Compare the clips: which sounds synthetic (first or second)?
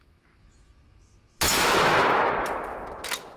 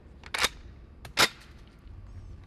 first